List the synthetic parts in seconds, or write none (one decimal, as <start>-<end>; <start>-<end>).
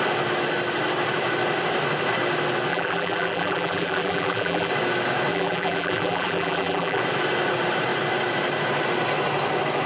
2.7-4.7; 5.3-7.0